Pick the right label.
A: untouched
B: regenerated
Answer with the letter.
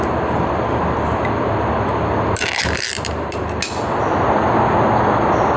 A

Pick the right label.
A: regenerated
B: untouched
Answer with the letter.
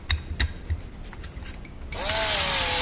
B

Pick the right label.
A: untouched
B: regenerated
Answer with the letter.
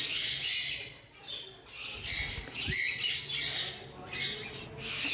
A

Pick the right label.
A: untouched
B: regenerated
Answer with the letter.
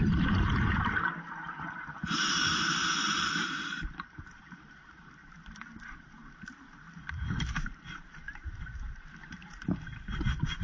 B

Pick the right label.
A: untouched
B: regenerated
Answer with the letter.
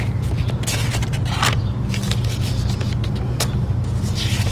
A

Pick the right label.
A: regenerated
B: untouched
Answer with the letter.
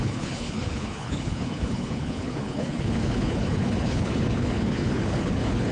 A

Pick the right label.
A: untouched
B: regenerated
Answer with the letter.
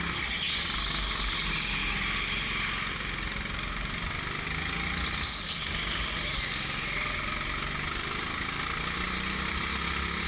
A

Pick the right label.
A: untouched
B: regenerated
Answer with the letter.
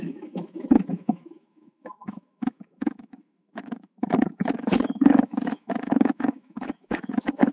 B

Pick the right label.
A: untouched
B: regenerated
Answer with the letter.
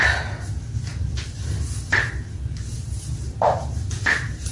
A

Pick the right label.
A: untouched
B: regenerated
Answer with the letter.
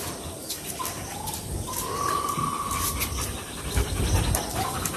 A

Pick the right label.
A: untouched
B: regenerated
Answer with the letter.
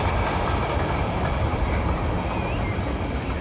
A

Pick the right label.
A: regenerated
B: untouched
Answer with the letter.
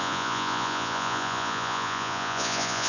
A